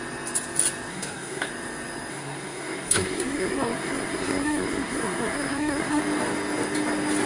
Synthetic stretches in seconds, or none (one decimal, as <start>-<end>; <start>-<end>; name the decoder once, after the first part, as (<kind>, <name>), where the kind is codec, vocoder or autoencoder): 0.9-1.5 (codec, SNAC); 2.1-6.0